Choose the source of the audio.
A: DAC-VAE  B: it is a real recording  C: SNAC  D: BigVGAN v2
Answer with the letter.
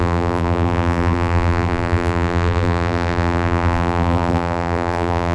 D